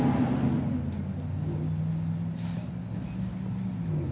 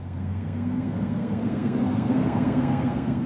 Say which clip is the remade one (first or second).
second